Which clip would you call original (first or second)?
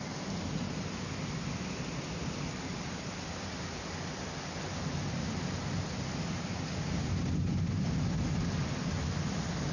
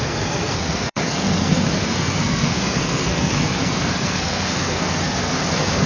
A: first